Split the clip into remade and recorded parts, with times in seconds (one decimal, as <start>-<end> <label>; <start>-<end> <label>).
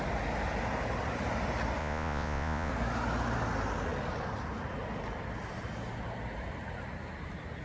0.0-1.8 recorded; 1.8-2.7 remade; 2.7-7.6 recorded